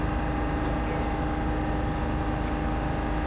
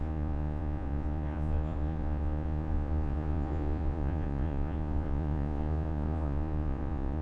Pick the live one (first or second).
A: first